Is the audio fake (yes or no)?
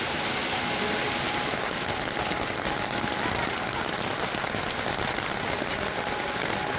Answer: no